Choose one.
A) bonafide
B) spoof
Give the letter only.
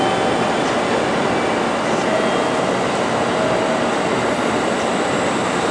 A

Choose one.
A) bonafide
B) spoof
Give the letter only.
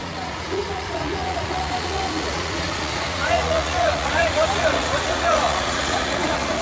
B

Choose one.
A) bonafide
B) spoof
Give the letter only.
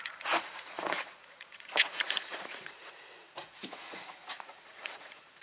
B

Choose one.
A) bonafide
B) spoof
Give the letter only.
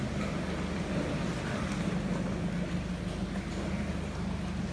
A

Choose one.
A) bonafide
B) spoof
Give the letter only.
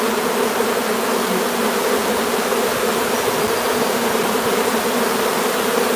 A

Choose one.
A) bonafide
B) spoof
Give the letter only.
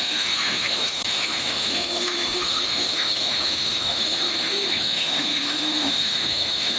B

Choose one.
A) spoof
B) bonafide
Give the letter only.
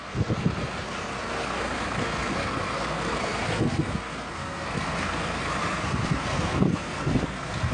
A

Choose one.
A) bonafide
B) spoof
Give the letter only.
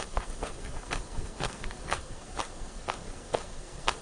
B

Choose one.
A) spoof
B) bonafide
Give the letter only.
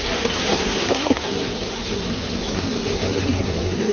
A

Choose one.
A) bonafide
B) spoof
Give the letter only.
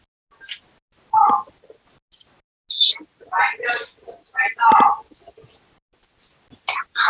A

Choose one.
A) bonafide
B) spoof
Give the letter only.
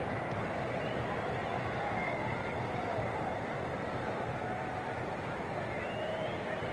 A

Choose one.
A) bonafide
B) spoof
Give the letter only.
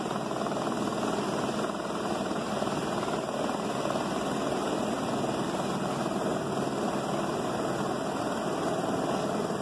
A